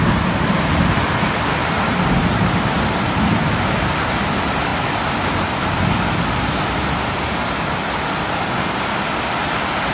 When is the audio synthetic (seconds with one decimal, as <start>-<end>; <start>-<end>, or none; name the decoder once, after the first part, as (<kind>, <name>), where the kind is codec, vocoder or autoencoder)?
1.6-3.5 (vocoder, BigVGAN v2)